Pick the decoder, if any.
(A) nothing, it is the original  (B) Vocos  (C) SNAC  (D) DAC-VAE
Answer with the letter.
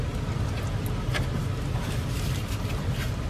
A